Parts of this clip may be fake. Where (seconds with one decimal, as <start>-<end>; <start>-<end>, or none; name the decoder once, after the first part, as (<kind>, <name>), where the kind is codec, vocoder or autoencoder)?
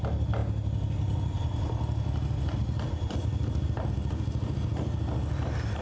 none